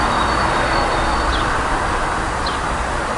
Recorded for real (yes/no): yes